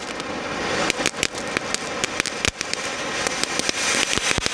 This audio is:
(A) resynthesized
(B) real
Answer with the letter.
B